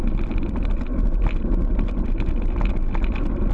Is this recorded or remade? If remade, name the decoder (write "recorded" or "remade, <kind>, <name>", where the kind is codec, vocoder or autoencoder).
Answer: remade, vocoder, BigVGAN v2